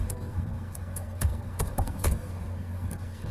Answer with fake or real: fake